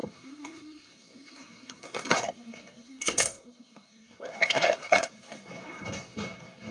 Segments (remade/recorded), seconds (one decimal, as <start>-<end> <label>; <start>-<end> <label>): 0.0-6.7 remade